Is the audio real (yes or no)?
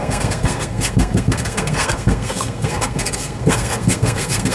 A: no